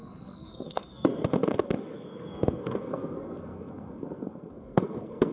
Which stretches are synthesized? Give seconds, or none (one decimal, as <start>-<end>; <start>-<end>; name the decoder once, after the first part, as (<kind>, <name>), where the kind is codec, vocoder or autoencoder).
0.0-5.3 (codec, SNAC)